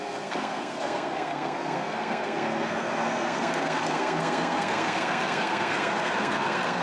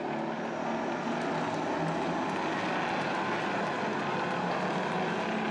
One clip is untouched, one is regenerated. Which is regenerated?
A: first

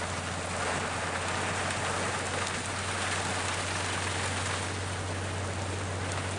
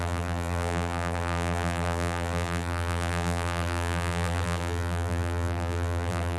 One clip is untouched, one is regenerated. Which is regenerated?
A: second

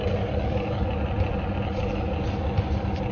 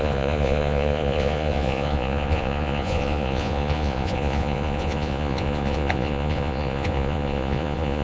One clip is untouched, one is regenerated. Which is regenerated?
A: second